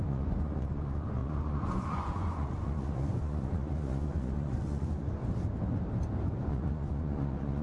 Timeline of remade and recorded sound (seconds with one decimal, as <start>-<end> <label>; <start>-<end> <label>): 0.0-5.2 remade; 5.2-6.4 recorded; 6.4-7.6 remade